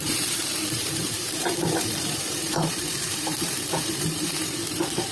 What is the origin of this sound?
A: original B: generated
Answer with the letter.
B